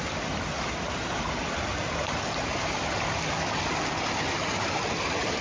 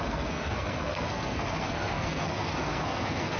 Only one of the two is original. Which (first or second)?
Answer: first